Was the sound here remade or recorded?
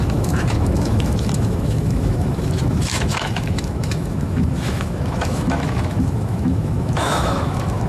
remade